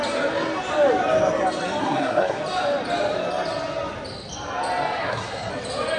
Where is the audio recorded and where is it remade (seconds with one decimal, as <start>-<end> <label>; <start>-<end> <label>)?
0.0-1.8 recorded; 1.8-2.4 remade; 2.4-5.0 recorded; 5.0-5.5 remade; 5.5-6.0 recorded